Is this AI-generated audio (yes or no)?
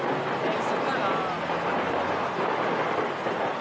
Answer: no